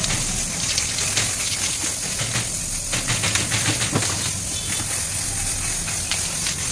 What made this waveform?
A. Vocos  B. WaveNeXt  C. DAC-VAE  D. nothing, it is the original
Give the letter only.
D